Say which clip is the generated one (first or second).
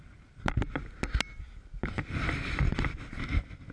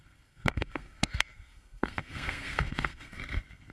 second